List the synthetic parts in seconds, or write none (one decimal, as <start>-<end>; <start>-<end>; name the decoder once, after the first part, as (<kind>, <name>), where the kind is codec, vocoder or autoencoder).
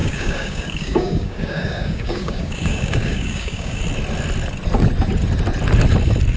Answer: 0.0-3.8 (codec, DAC)